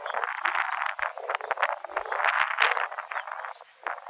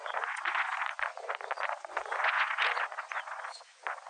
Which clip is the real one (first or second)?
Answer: first